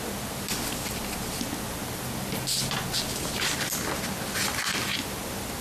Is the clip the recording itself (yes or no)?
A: yes